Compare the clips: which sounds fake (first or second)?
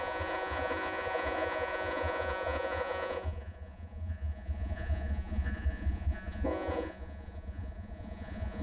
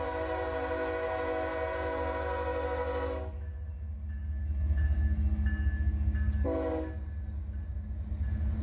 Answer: first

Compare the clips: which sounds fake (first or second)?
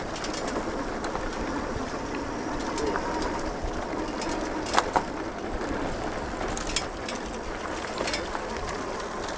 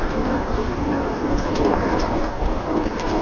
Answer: second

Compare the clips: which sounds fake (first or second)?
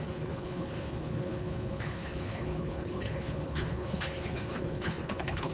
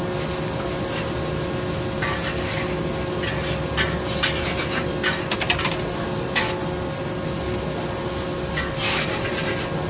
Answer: first